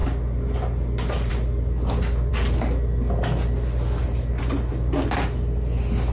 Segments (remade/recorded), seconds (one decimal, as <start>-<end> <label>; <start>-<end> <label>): 0.0-6.1 recorded

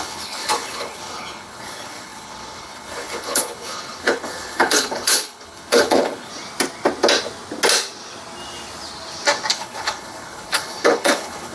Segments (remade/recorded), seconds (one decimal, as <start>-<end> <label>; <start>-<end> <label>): 0.0-6.3 remade; 6.3-9.5 recorded; 9.5-11.5 remade

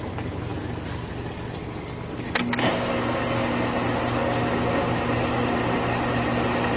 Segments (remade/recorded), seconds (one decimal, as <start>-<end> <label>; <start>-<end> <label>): 0.0-6.8 recorded